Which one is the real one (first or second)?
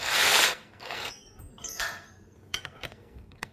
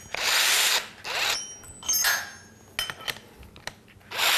second